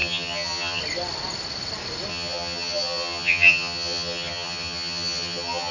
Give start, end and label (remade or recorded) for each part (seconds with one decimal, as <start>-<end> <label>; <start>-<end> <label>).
0.0-0.8 remade; 0.8-2.1 recorded; 2.1-5.7 remade